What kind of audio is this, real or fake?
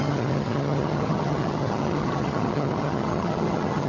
fake